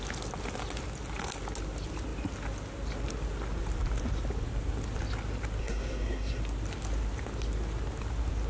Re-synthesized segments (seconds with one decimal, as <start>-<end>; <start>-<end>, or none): 5.6-6.4